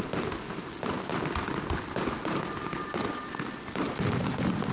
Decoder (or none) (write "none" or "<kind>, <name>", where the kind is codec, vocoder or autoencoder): none